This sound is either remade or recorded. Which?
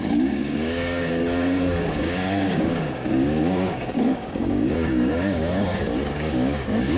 remade